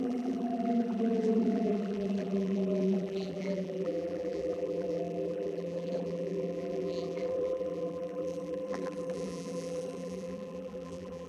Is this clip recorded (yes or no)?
no